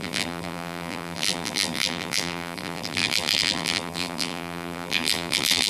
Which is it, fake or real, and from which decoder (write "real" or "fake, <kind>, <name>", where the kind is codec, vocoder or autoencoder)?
fake, vocoder, BigVGAN v2